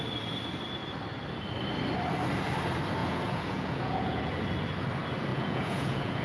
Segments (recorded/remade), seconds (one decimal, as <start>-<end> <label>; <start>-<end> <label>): 0.0-3.0 recorded; 3.0-4.2 remade; 4.2-5.3 recorded; 5.3-6.2 remade